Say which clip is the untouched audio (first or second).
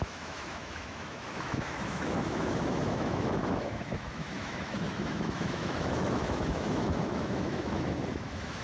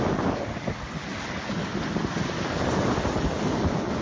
second